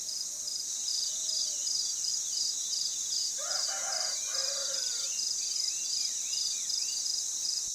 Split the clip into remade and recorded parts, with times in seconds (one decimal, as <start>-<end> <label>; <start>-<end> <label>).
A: 0.0-2.9 recorded; 2.9-3.9 remade; 3.9-7.7 recorded